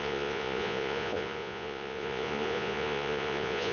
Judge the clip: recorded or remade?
remade